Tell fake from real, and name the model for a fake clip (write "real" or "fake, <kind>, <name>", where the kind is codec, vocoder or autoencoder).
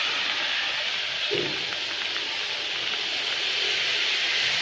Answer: real